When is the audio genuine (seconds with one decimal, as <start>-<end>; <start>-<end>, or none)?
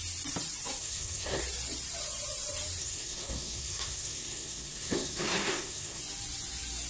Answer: 0.0-0.8; 1.4-2.8; 6.0-6.9